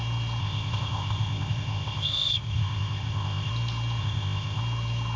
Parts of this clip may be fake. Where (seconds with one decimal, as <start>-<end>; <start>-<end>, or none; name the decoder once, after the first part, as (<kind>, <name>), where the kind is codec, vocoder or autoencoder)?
0.4-3.5 (codec, ZipCodec); 4.0-4.6